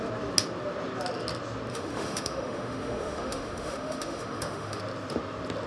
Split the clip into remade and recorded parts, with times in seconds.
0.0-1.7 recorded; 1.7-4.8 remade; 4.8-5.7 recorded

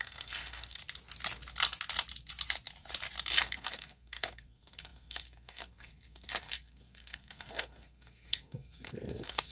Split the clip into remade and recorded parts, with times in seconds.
0.0-0.8 remade; 0.8-3.4 recorded; 3.4-9.5 remade

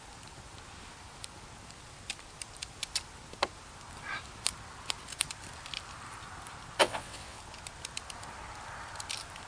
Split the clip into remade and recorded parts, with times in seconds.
0.0-6.8 recorded; 6.8-7.4 remade; 7.4-9.5 recorded